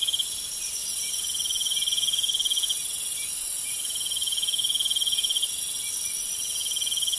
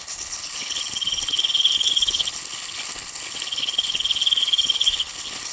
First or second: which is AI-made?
second